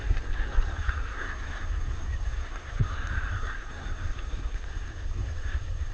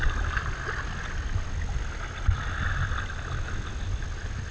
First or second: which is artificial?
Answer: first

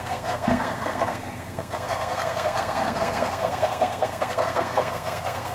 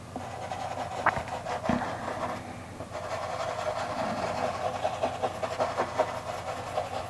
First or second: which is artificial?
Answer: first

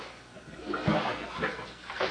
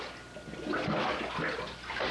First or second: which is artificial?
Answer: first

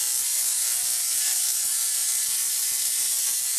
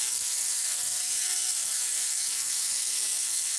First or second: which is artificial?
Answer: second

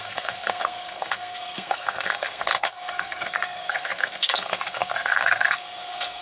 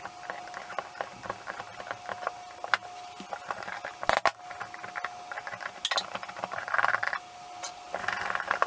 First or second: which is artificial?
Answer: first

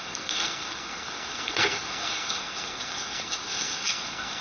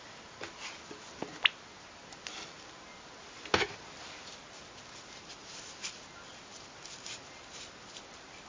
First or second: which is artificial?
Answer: first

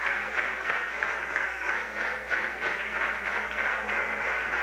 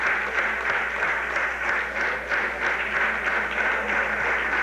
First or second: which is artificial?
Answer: first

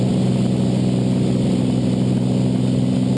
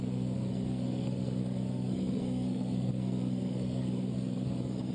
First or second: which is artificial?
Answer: second